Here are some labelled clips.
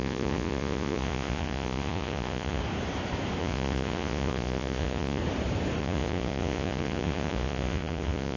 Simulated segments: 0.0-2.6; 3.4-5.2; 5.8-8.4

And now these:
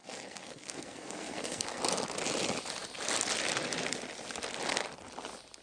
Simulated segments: 0.0-1.8

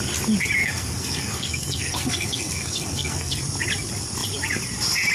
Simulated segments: 0.6-3.4